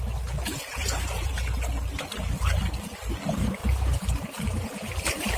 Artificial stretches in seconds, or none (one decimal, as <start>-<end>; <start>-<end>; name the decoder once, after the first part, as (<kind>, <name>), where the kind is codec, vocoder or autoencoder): 0.7-1.3 (vocoder, Vocos)